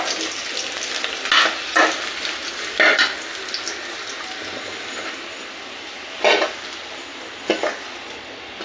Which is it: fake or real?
real